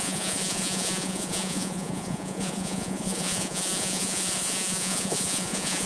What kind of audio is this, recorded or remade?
remade